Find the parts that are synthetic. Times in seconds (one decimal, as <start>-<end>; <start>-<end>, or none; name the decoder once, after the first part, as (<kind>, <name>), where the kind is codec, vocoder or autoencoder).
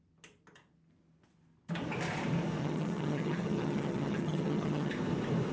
2.6-4.9 (vocoder, HiFi-GAN)